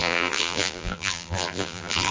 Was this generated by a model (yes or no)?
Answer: yes